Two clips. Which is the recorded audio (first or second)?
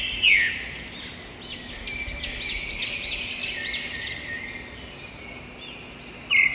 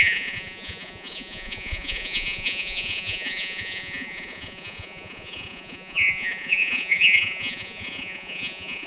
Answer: first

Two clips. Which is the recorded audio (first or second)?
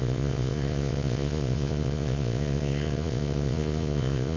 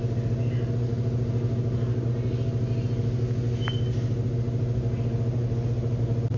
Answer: second